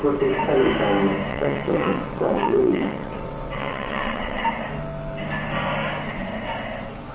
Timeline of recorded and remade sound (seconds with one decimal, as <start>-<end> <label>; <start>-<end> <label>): 0.0-1.3 recorded; 1.3-4.4 remade; 4.4-7.1 recorded

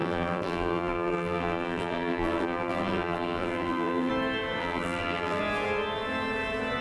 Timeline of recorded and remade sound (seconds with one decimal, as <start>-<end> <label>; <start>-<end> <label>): 0.0-4.1 remade; 4.1-4.6 recorded; 4.6-5.4 remade; 5.4-6.8 recorded

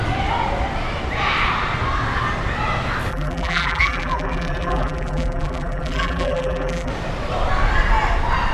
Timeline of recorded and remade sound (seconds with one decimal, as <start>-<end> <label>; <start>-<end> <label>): 0.0-3.1 recorded; 3.1-6.9 remade; 6.9-8.5 recorded

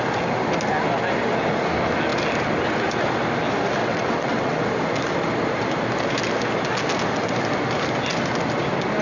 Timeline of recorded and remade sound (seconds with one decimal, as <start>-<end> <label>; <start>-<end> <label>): 0.0-3.8 recorded; 3.8-4.6 remade; 4.6-9.0 recorded

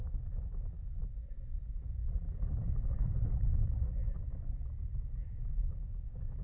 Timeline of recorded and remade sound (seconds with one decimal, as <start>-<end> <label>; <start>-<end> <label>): 0.0-1.0 remade; 1.0-2.5 recorded; 2.5-3.9 remade; 3.9-5.2 recorded; 5.2-6.4 remade

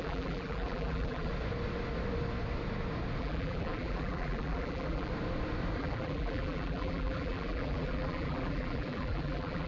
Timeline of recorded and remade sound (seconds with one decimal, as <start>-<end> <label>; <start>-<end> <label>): 0.0-1.3 remade; 1.3-3.2 recorded; 3.2-5.1 remade; 5.1-5.8 recorded; 5.8-9.7 remade

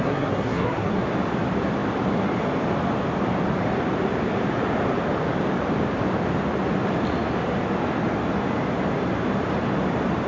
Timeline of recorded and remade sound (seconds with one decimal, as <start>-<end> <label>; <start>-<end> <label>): 0.0-1.0 remade; 1.0-10.3 recorded